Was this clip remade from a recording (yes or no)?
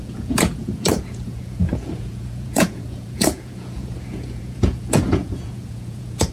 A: yes